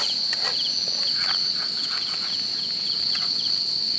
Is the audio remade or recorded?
recorded